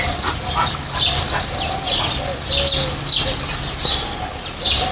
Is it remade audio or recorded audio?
recorded